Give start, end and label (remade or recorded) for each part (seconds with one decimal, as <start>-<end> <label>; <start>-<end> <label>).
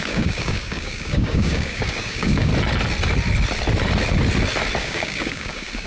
0.0-2.5 remade; 2.5-4.8 recorded; 4.8-5.9 remade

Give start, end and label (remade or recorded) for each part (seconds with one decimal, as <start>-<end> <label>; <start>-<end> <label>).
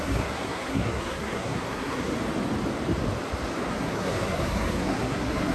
0.0-2.1 remade; 2.1-3.7 recorded; 3.7-5.5 remade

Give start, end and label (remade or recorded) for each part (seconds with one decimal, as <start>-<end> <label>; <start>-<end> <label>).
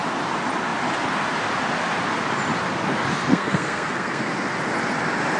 0.0-3.3 recorded; 3.3-4.3 remade; 4.3-5.4 recorded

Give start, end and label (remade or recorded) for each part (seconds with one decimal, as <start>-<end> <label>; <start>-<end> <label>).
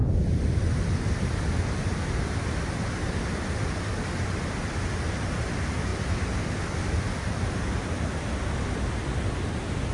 0.0-5.9 recorded; 5.9-8.9 remade; 8.9-9.9 recorded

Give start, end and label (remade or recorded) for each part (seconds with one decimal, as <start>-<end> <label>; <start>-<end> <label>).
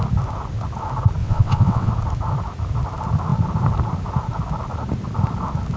0.0-1.2 recorded; 1.2-1.9 remade; 1.9-5.8 recorded